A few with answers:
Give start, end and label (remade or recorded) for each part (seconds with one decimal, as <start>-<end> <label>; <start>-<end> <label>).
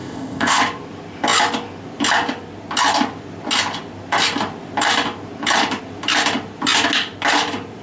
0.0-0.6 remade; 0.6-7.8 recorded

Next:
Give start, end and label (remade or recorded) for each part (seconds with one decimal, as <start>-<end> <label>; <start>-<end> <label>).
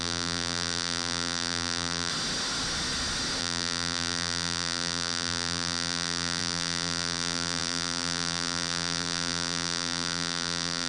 0.0-2.1 remade; 2.1-3.4 recorded; 3.4-10.9 remade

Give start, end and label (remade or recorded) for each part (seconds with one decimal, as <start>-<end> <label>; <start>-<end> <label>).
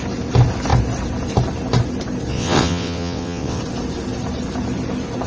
0.0-2.3 recorded; 2.3-3.6 remade; 3.6-5.3 recorded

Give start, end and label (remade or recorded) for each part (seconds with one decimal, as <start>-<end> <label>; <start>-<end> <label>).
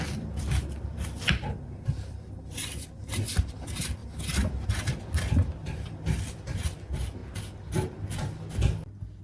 0.0-7.2 remade; 7.2-9.2 recorded